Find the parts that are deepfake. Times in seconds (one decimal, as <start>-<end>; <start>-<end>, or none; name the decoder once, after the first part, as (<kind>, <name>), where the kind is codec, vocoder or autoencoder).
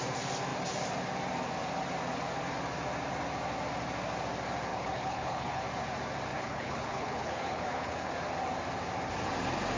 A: 4.7-5.6 (codec, HILCodec); 6.3-8.1